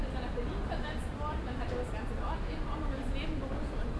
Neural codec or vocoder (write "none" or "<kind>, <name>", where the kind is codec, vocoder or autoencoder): none